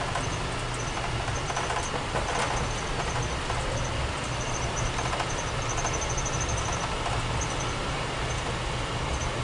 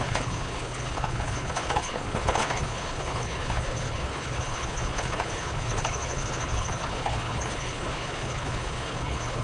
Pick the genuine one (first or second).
first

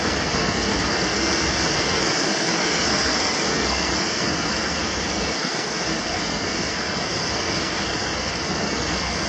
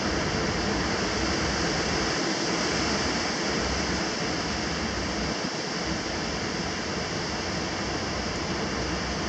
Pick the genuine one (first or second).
second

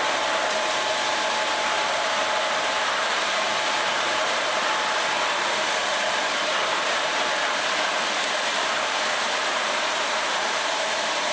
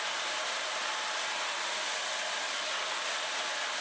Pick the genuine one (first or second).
second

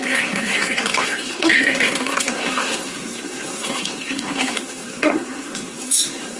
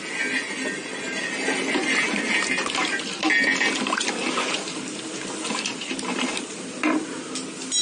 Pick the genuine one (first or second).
second